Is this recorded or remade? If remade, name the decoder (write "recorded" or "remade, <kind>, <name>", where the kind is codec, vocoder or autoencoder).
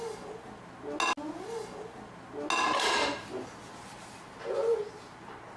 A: recorded